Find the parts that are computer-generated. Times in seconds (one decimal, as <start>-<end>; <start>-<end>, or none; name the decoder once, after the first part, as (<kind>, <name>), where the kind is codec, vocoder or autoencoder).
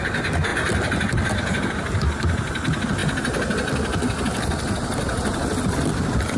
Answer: none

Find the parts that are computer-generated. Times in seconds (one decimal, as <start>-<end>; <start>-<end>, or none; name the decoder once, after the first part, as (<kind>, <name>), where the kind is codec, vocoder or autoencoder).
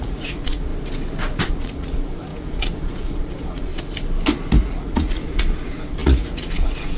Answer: 0.0-0.7 (vocoder, Vocos); 1.5-3.7; 4.6-7.0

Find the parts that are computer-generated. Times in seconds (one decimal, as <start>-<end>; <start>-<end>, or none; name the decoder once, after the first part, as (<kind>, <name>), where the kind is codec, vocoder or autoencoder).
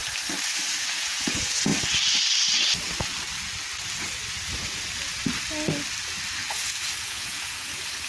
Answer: 0.8-1.7 (vocoder, Vocos); 6.5-8.1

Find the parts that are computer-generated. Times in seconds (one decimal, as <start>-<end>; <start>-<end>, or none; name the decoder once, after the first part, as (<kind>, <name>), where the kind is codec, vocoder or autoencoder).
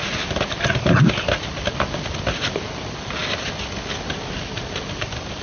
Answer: none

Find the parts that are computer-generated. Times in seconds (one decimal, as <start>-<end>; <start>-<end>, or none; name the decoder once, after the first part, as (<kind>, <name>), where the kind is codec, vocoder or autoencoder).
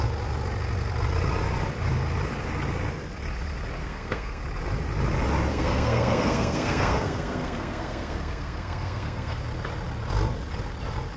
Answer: 3.8-4.4 (codec, SNAC); 5.5-9.4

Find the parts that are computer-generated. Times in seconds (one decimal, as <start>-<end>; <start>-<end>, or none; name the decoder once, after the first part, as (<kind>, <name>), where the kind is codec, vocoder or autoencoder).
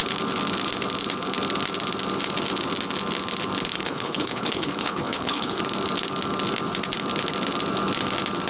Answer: 3.7-5.6 (codec, HILCodec)